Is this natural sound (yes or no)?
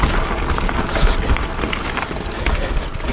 yes